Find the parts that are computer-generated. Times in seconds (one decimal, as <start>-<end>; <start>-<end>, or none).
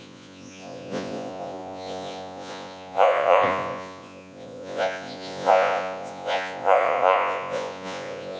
0.0-8.4